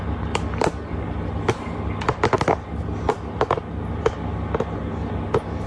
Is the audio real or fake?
real